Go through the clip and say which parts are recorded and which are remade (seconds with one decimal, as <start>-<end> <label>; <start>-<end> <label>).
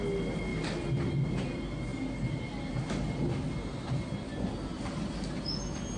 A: 0.0-6.0 recorded